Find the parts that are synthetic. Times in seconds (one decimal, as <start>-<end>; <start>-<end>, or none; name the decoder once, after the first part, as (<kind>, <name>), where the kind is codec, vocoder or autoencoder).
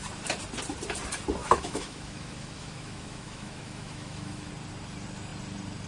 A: 1.4-4.5 (autoencoder, DAC-VAE)